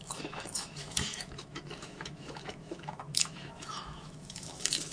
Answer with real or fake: fake